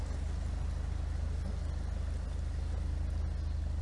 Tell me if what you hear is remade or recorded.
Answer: recorded